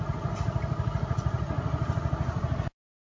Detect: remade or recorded recorded